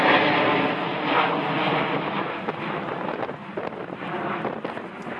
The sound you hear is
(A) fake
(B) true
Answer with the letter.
B